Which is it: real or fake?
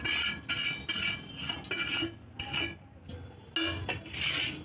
real